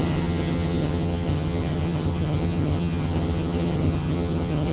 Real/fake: fake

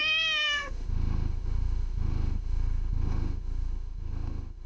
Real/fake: fake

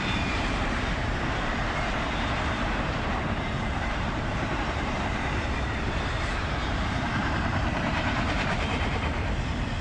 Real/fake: fake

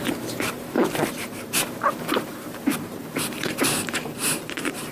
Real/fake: fake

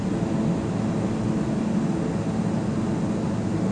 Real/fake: real